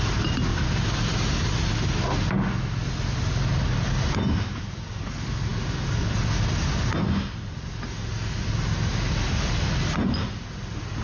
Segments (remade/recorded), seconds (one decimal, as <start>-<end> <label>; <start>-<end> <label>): 0.0-0.5 recorded; 0.5-1.6 remade; 1.6-3.5 recorded; 3.5-4.6 remade; 4.6-11.0 recorded

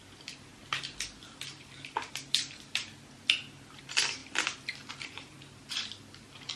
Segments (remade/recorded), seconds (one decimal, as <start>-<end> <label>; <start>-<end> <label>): 0.0-0.5 remade; 0.5-1.2 recorded; 1.2-2.8 remade; 2.8-3.5 recorded; 3.5-4.2 remade; 4.2-4.9 recorded; 4.9-6.6 remade